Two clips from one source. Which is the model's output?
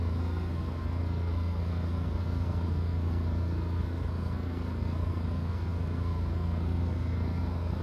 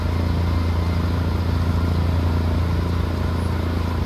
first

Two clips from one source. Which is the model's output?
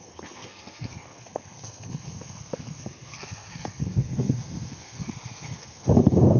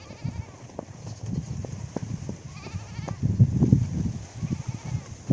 first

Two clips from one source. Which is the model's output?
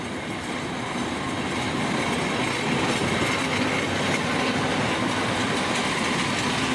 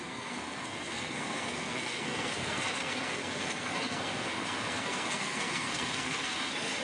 second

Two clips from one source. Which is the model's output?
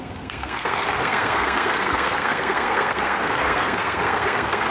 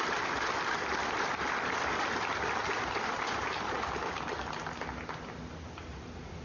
first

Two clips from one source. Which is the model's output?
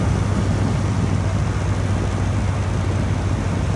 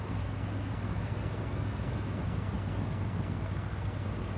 second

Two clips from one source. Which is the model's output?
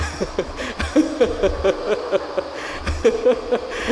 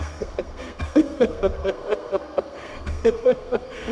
second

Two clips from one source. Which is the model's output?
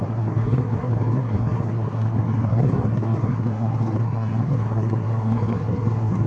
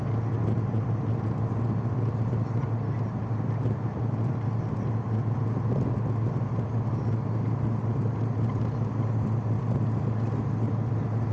first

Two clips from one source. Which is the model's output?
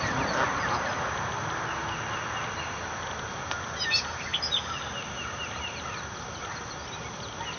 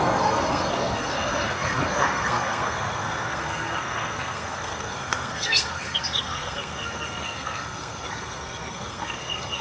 second